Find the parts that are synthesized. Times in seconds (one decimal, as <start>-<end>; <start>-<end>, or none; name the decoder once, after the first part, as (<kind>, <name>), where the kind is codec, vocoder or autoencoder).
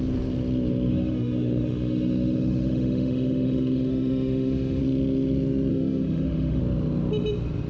0.9-4.8 (autoencoder, DAC-VAE); 5.7-6.6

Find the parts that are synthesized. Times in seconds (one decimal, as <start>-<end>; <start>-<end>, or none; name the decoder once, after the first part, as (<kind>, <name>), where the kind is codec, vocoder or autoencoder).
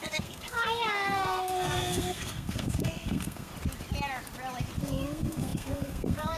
0.0-3.5 (codec, SNAC); 4.8-6.4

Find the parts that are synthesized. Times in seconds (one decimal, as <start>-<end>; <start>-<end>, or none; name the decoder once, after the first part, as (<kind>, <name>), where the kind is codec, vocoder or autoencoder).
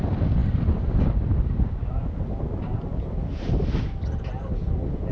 none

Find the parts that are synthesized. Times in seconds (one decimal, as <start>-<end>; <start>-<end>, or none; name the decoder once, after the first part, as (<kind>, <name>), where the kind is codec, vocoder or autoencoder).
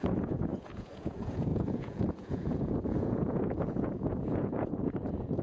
0.0-5.4 (vocoder, Vocos)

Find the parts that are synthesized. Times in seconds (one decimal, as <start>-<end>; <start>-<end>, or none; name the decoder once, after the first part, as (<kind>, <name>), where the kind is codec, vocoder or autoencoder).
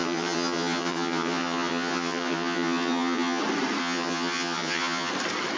0.0-3.4 (vocoder, HiFi-GAN); 3.8-5.1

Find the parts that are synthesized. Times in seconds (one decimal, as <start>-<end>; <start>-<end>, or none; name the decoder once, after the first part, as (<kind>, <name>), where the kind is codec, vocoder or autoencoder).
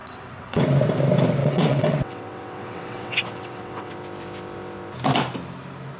0.0-0.6 (vocoder, WaveNeXt); 1.4-3.9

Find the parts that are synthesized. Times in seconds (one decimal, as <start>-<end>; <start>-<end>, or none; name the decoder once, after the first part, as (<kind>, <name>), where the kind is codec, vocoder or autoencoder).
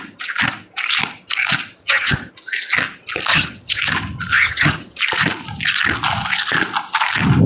1.8-2.3 (vocoder, HiFi-GAN); 3.3-3.8; 4.3-5.0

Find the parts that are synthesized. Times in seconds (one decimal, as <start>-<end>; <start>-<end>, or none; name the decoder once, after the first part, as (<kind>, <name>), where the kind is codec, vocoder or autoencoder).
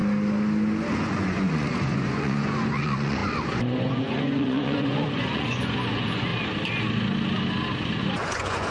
0.9-6.3 (vocoder, Vocos); 8.0-8.7